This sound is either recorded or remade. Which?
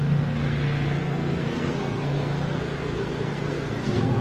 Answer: remade